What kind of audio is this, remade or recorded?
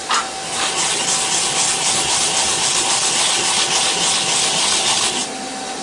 recorded